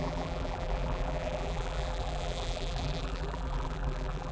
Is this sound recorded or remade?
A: remade